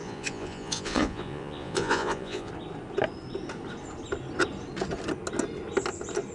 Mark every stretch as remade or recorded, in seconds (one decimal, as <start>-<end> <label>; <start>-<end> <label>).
0.0-2.5 remade; 2.5-6.3 recorded